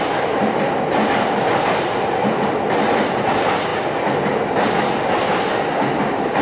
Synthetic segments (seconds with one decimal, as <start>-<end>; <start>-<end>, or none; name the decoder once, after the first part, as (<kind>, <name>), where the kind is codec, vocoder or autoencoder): none